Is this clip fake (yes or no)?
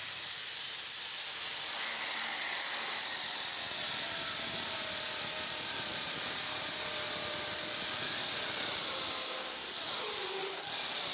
no